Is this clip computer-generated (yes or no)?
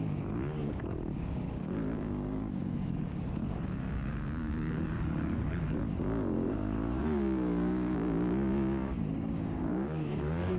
yes